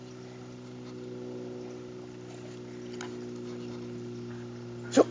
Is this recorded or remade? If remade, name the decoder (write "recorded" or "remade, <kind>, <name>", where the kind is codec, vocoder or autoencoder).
recorded